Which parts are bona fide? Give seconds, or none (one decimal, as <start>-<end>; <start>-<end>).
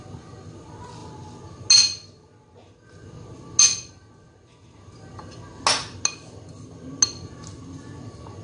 0.0-8.4